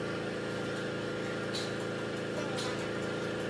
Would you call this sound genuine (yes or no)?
yes